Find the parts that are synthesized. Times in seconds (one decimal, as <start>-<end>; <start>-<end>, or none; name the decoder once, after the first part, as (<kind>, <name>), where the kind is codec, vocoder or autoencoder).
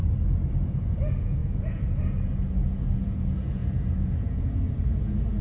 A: 0.5-5.4 (vocoder, Vocos)